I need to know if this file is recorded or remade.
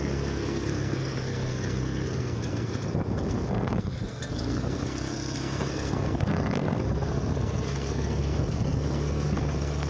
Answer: remade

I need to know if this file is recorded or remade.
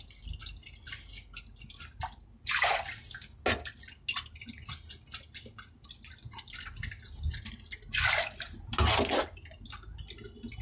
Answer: recorded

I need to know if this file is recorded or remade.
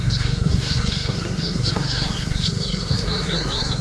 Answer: remade